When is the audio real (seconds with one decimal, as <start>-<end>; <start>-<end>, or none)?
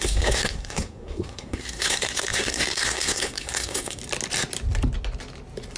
4.0-5.8